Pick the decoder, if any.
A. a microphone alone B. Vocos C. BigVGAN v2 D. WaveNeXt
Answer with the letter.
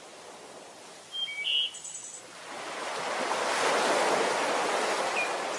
A